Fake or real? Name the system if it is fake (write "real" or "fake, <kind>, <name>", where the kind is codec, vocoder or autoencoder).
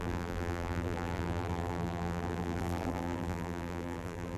fake, vocoder, BigVGAN v2